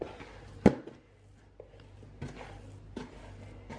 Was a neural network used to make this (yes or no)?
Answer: no